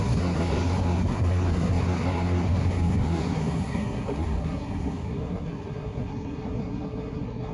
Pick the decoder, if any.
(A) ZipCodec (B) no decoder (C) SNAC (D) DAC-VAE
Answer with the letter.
C